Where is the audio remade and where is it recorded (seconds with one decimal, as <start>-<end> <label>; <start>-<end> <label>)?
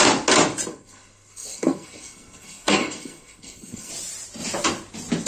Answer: 0.0-0.7 recorded; 0.7-3.9 remade; 3.9-5.3 recorded